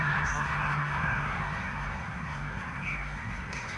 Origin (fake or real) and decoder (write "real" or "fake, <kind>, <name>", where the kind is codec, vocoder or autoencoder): fake, codec, SNAC